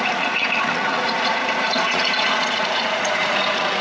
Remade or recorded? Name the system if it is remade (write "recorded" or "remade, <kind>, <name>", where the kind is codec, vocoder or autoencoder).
remade, vocoder, Vocos